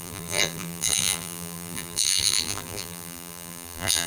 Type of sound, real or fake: fake